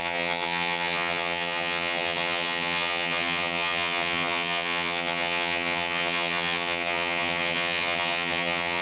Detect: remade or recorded remade